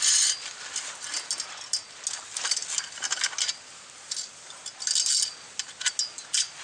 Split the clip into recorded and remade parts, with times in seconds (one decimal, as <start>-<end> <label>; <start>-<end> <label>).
0.0-6.6 recorded